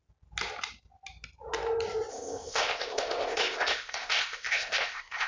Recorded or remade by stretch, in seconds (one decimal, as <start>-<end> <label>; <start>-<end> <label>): 0.0-2.1 recorded; 2.1-5.3 remade